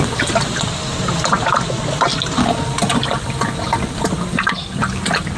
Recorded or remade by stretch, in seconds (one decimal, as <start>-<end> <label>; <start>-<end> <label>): 0.0-5.4 recorded